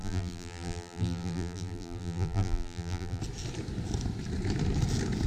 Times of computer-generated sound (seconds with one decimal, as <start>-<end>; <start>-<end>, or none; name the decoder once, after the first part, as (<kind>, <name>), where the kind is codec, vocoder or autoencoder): 0.0-3.2 (vocoder, BigVGAN v2)